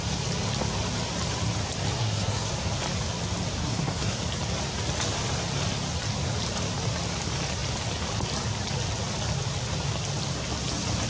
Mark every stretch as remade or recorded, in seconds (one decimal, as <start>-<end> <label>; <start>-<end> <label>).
0.0-2.0 recorded; 2.0-2.5 remade; 2.5-3.6 recorded; 3.6-4.2 remade; 4.2-11.1 recorded

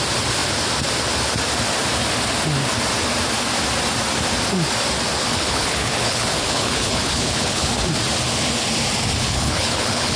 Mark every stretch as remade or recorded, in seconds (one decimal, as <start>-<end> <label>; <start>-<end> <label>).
0.0-5.3 recorded; 5.3-7.7 remade; 7.7-9.2 recorded; 9.2-10.2 remade

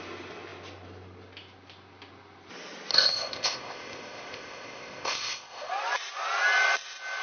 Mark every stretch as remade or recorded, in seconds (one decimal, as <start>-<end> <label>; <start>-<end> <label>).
0.0-2.9 recorded; 2.9-5.7 remade; 5.7-7.2 recorded

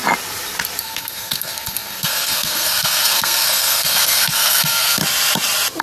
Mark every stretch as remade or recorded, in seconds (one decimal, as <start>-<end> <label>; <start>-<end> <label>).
0.0-0.8 recorded; 0.8-5.0 remade; 5.0-5.8 recorded

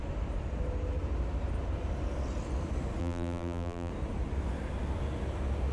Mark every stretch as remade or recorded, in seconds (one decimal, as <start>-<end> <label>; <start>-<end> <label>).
0.0-3.0 recorded; 3.0-3.9 remade; 3.9-5.7 recorded

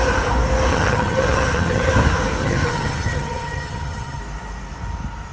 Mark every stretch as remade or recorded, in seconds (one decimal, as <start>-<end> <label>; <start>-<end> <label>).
0.0-0.7 recorded; 0.7-1.9 remade; 1.9-2.4 recorded; 2.4-4.2 remade; 4.2-5.3 recorded

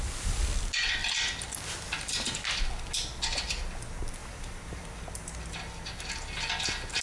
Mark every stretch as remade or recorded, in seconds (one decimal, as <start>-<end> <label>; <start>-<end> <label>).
0.0-1.0 recorded; 1.0-2.0 remade; 2.0-4.2 recorded; 4.2-5.0 remade; 5.0-7.0 recorded